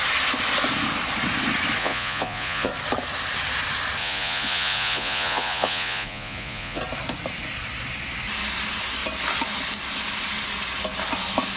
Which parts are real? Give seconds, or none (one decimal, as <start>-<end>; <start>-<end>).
0.0-1.8; 2.7-4.0; 6.8-11.6